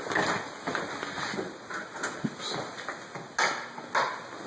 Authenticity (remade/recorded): recorded